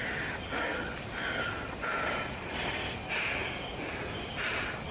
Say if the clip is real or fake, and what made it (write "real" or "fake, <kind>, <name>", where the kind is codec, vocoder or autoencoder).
real